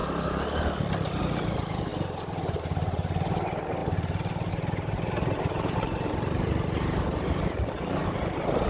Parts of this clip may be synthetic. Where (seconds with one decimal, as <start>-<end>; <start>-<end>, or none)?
1.2-1.9; 2.6-8.7